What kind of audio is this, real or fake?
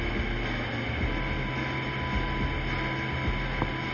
real